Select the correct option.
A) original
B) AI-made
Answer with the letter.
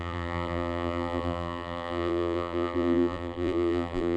B